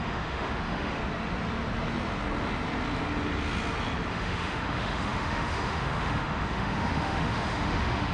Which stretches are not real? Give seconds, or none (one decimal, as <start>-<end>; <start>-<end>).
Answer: 0.0-1.0; 4.1-8.1